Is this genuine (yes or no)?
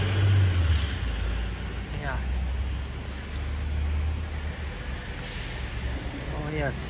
yes